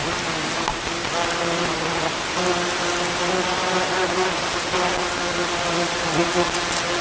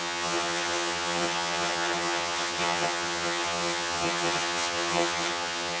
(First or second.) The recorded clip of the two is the first